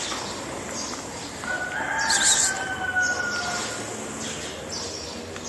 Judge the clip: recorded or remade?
recorded